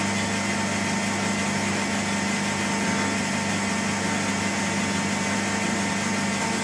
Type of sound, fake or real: real